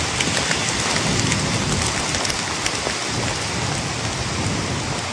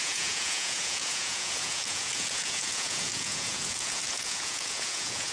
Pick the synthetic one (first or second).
second